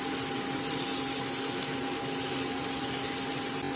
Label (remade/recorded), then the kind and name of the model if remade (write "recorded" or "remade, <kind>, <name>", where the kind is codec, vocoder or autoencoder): recorded